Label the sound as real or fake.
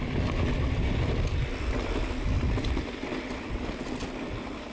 real